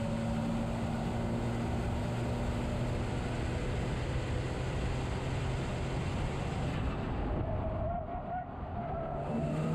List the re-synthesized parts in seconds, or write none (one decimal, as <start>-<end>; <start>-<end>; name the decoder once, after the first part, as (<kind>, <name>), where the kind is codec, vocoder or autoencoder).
none